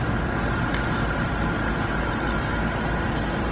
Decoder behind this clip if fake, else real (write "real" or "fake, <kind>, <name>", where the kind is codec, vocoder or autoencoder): real